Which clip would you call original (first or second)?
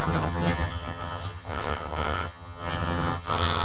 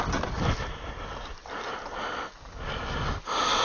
second